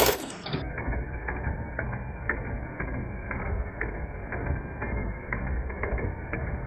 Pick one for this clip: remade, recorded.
remade